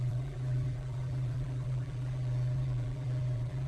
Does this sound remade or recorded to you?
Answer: remade